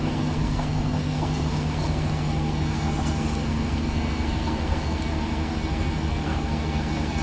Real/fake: fake